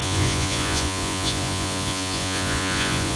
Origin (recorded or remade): remade